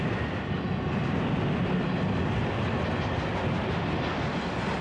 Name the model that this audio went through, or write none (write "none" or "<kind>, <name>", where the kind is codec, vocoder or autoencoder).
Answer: none